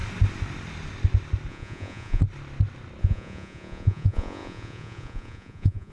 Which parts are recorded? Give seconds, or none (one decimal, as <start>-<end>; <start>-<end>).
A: 0.0-1.5; 2.2-3.0